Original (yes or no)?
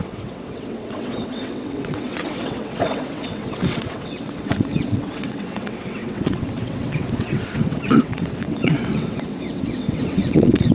no